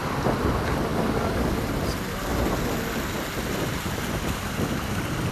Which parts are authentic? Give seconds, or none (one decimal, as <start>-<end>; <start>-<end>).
0.0-0.9; 1.6-5.3